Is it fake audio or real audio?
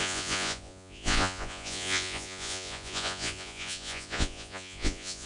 fake